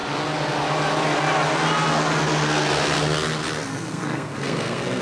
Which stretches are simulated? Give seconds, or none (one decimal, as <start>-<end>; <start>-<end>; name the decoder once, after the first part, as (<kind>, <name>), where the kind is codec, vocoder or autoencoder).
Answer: 3.7-5.0 (codec, SNAC)